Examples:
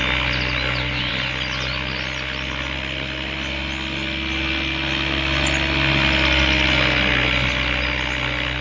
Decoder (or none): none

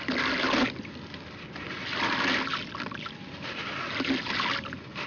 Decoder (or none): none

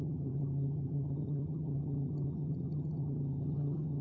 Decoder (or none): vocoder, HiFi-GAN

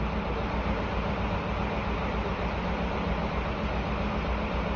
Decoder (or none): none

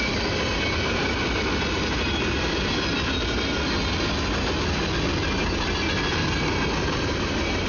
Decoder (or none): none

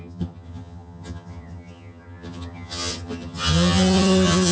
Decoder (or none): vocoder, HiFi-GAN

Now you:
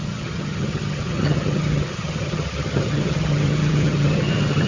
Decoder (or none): vocoder, HiFi-GAN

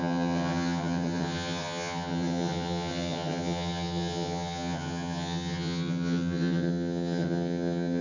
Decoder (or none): vocoder, HiFi-GAN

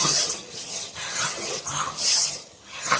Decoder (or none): vocoder, HiFi-GAN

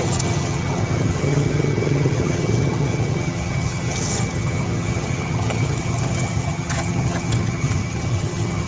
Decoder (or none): vocoder, HiFi-GAN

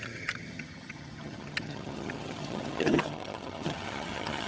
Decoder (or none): vocoder, HiFi-GAN